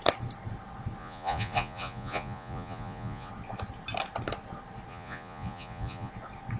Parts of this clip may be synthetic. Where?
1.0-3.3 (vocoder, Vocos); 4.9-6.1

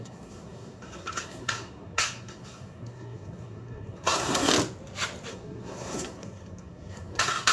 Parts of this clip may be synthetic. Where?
0.0-4.5 (codec, SNAC); 5.3-7.5

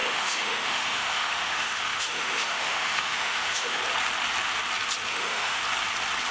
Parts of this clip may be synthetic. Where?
0.0-3.8 (autoencoder, DAC-VAE); 5.1-5.6

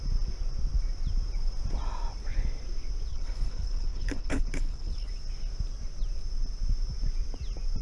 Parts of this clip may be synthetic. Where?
3.1-5.1 (codec, HILCodec)

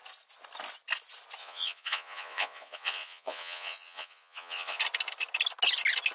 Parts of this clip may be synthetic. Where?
1.4-4.8 (vocoder, Vocos)

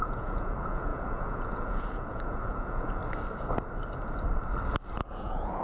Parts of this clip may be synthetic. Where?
0.0-3.0 (vocoder, Vocos); 5.0-5.6